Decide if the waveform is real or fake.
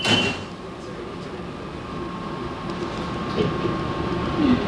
real